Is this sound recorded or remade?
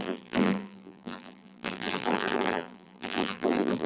remade